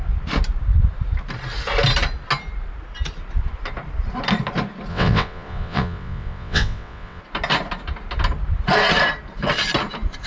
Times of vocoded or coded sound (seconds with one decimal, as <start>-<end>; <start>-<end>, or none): 4.9-7.2